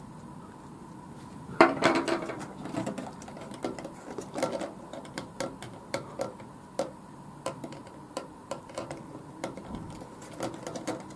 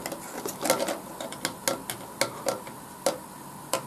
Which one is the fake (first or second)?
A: first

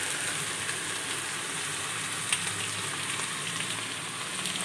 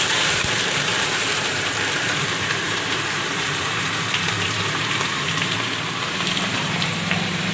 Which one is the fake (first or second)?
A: second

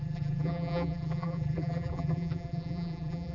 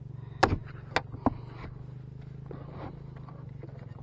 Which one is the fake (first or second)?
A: first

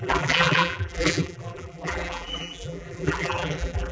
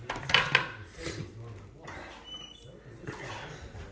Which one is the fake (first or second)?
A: first